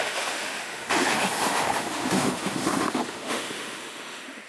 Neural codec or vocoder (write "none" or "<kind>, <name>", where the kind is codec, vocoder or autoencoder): autoencoder, DAC-VAE